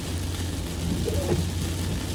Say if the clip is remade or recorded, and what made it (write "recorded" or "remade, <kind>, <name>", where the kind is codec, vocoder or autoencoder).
recorded